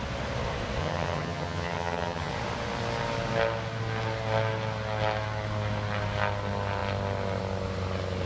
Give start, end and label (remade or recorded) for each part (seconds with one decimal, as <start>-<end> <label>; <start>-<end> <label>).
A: 0.0-0.8 recorded; 0.8-2.3 remade; 2.3-8.3 recorded